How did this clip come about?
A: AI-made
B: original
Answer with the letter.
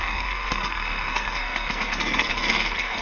A